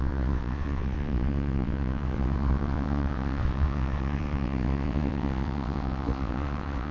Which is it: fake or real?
fake